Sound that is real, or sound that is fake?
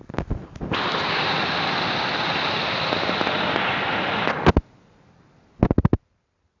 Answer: real